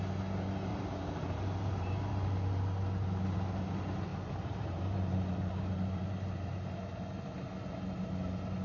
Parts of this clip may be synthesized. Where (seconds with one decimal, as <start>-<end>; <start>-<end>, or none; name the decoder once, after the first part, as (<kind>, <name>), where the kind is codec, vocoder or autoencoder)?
0.7-2.1 (vocoder, BigVGAN v2); 4.1-6.8